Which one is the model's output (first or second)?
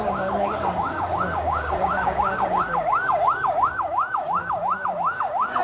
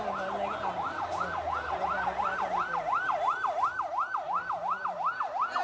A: first